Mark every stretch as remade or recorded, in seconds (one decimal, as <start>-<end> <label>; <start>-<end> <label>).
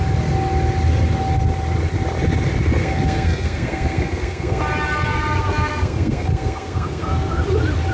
0.0-2.8 recorded; 2.8-4.6 remade; 4.6-5.1 recorded; 5.1-7.4 remade; 7.4-7.9 recorded